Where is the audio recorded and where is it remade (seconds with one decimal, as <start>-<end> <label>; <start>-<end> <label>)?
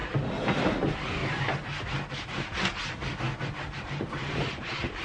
0.0-0.6 recorded; 0.6-1.2 remade; 1.2-3.4 recorded; 3.4-5.0 remade